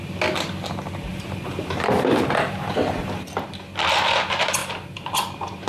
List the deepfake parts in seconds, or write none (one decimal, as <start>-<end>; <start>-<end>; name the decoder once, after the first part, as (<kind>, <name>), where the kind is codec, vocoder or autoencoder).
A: 1.1-3.3 (vocoder, BigVGAN v2); 4.6-5.1